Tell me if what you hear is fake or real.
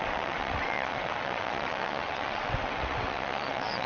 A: fake